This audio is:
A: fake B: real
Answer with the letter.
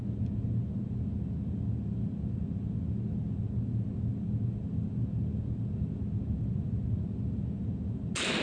B